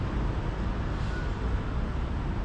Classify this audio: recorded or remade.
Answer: recorded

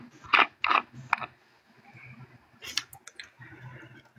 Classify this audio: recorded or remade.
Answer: recorded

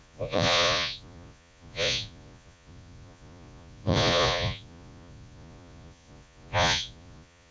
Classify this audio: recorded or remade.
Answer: remade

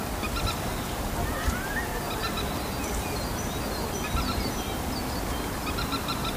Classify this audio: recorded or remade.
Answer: recorded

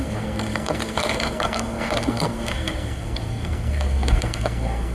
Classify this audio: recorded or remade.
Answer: remade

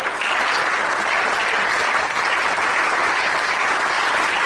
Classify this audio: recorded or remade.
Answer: recorded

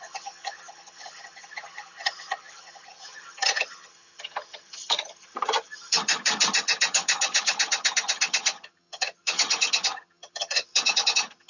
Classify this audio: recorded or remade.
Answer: remade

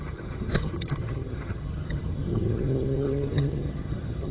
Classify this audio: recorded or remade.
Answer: remade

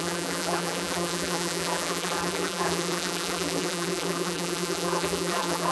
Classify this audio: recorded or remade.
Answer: remade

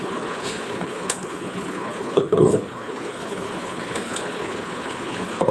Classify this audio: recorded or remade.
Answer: remade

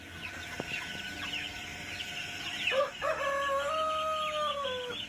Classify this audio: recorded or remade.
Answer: recorded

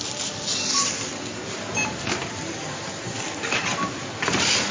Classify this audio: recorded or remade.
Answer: recorded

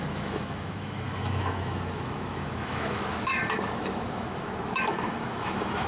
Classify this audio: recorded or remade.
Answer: remade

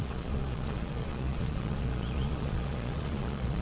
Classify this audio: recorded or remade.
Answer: remade